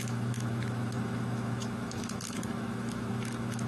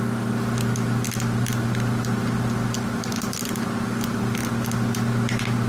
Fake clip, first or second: first